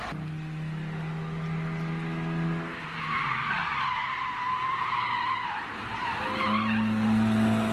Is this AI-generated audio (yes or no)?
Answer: no